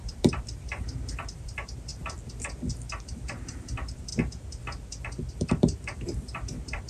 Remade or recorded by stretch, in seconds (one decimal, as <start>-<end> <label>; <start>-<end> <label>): 0.0-1.9 remade; 1.9-3.0 recorded; 3.0-4.1 remade; 4.1-5.3 recorded; 5.3-6.9 remade